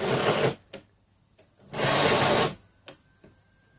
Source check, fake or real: real